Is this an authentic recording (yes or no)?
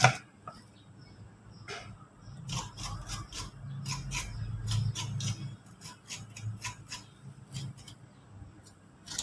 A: yes